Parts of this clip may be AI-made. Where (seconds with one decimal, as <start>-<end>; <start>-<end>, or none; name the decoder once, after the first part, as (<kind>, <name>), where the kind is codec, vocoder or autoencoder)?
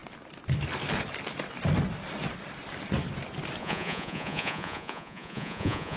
3.6-6.0 (vocoder, Vocos)